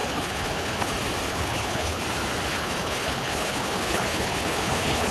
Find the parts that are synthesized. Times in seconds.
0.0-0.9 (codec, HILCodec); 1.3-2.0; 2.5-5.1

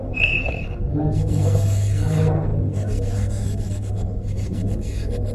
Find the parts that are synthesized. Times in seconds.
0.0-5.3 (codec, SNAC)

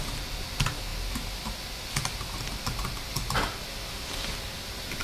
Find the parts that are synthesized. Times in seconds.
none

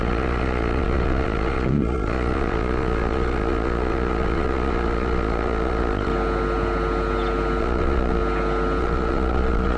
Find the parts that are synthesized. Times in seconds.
0.0-6.1 (vocoder, Vocos); 7.6-8.2; 8.8-9.8

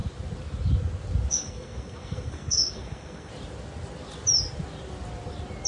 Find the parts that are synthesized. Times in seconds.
1.3-3.3 (codec, SNAC)

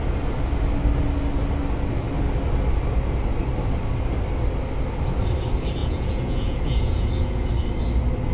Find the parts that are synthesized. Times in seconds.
5.8-7.5 (vocoder, Vocos)

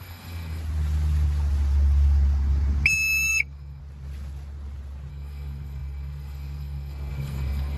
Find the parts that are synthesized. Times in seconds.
0.0-0.6 (codec, SNAC); 3.3-3.8; 5.1-7.8

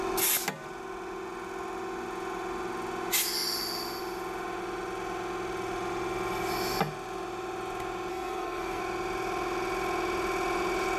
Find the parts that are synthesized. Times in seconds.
8.1-8.8 (codec, SNAC)